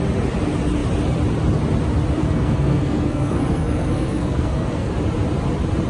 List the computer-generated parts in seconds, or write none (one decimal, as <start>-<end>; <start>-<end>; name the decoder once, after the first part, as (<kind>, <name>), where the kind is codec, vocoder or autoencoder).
2.2-4.9 (codec, SNAC)